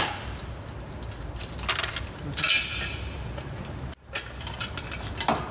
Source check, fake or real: real